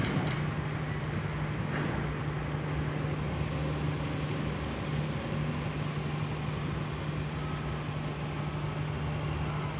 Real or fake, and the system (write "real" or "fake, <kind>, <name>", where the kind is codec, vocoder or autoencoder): real